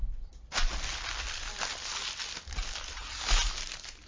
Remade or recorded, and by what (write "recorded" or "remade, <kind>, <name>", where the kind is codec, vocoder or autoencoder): recorded